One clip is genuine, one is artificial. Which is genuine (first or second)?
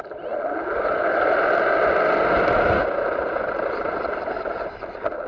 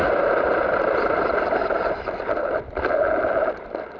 first